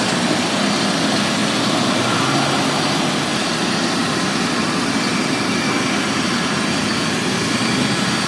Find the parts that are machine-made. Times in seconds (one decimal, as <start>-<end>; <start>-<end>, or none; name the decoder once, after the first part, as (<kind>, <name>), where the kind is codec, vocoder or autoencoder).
4.0-7.3 (vocoder, BigVGAN v2)